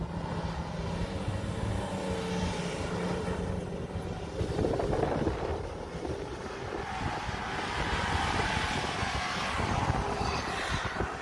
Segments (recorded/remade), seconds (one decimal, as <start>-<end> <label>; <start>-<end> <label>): 0.0-11.2 recorded